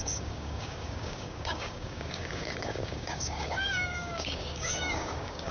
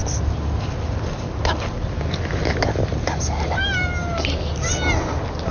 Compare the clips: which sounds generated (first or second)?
first